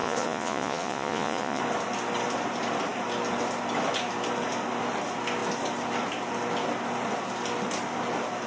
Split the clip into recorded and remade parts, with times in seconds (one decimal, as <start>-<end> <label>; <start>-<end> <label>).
0.0-1.6 remade; 1.6-8.5 recorded